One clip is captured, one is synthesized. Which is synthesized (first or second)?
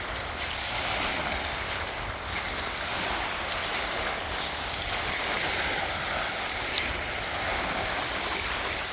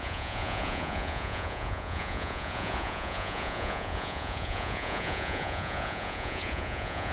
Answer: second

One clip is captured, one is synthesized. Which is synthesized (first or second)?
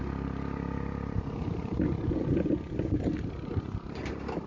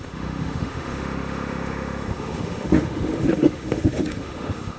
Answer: second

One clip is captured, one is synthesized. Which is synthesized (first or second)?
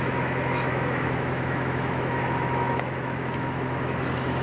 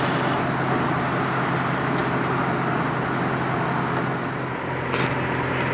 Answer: first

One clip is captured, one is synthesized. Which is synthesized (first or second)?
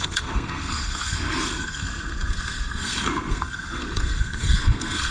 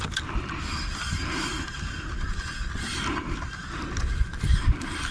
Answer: first